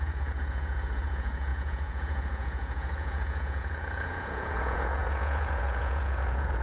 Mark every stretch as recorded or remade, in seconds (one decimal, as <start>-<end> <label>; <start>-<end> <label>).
0.0-6.6 remade